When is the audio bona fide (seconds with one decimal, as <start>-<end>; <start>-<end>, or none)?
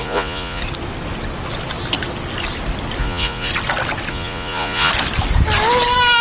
0.6-3.0; 3.5-4.1; 4.9-6.2